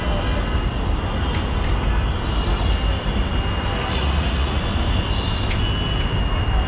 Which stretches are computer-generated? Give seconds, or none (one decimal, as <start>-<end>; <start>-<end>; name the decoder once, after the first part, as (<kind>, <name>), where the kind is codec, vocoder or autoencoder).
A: 3.9-4.6 (vocoder, Vocos)